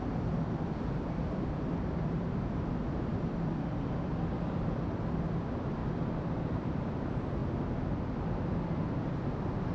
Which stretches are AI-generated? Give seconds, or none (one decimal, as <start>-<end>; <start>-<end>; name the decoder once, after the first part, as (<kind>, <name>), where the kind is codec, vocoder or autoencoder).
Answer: 0.0-5.8 (vocoder, BigVGAN v2); 6.5-7.4; 8.2-9.7